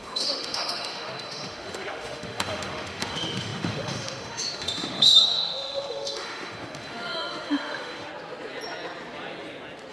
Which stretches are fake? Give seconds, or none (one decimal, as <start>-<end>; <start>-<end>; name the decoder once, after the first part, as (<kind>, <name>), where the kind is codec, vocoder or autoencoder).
0.0-8.1 (autoencoder, DAC-VAE)